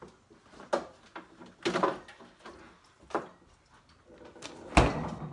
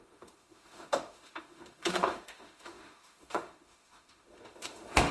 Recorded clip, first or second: first